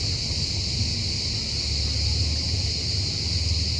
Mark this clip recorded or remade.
recorded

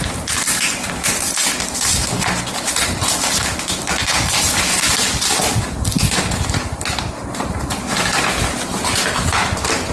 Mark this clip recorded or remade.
recorded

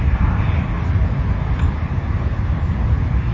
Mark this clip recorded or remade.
recorded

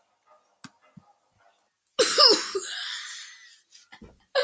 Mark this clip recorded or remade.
recorded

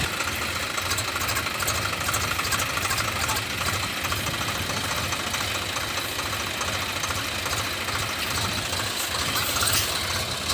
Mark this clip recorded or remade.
recorded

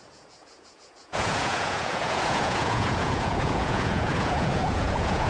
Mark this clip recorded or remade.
remade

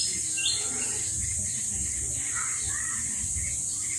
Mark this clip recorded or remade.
remade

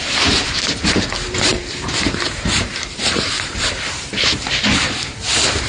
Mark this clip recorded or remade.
remade